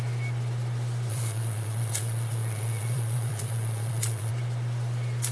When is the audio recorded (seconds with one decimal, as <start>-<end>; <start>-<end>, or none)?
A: 0.0-1.1; 4.3-5.3